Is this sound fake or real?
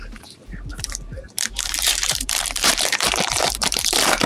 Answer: fake